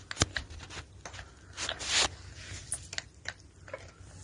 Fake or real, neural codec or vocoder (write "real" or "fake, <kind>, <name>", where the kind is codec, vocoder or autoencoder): real